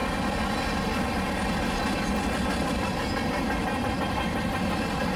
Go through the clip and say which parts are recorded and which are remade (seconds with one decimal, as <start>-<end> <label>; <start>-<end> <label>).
0.0-5.2 recorded